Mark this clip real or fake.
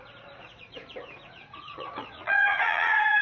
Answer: fake